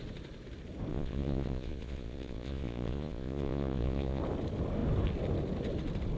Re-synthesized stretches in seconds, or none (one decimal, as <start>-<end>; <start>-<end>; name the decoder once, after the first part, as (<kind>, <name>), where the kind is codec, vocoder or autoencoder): 0.9-4.2 (vocoder, Vocos)